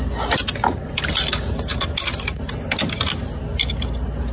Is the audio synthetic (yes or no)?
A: no